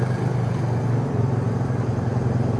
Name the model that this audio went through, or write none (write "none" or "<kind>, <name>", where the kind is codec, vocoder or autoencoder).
none